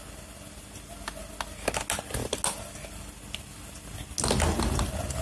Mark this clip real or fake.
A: real